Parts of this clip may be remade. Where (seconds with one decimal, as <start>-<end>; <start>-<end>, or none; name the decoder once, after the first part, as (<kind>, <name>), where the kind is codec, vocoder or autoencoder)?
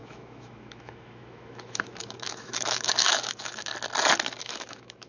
0.0-3.7 (autoencoder, DAC-VAE); 4.4-5.1